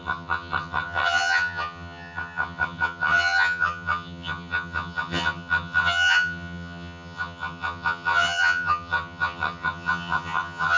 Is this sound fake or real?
fake